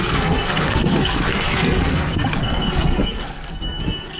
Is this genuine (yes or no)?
no